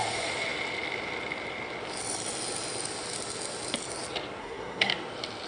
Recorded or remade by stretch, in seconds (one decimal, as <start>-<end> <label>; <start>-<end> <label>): 0.0-4.4 recorded; 4.4-4.9 remade; 4.9-5.5 recorded